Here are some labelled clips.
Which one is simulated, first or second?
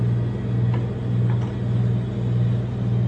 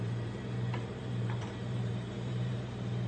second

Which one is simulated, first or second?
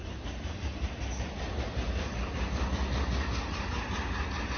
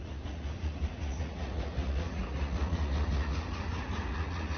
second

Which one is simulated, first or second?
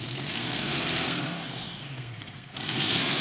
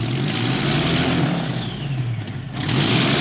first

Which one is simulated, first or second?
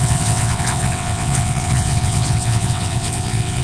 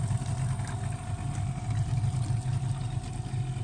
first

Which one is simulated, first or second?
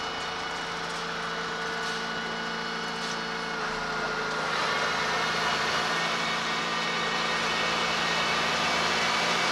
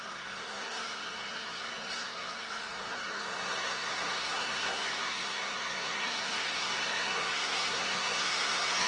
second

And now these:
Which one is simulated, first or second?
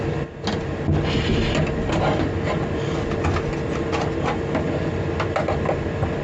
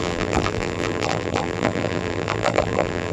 second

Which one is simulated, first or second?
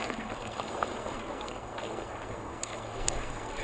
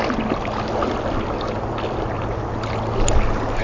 first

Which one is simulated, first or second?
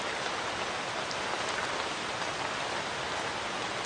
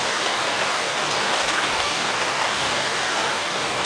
second